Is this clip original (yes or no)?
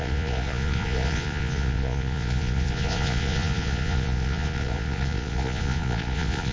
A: no